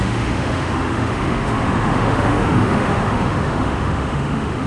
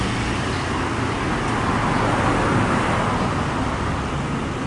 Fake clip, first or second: first